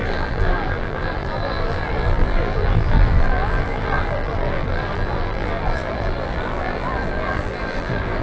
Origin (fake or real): fake